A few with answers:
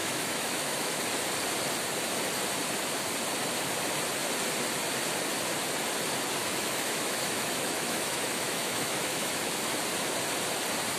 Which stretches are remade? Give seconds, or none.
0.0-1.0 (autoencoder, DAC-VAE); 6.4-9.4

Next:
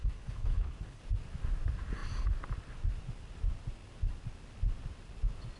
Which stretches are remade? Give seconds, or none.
0.0-1.0 (codec, HILCodec)

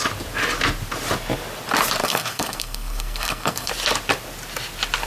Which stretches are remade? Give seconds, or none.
2.0-3.7 (codec, SNAC)

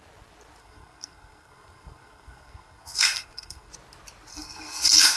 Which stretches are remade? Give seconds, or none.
0.6-3.7 (codec, SNAC); 4.3-5.2

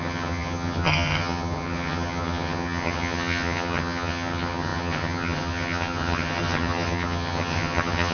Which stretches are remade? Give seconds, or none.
0.0-8.1 (vocoder, HiFi-GAN)

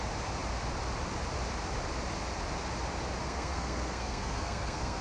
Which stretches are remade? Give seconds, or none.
3.2-5.0 (codec, SNAC)

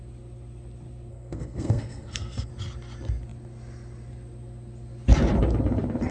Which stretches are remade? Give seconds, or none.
1.1-2.5 (codec, SNAC)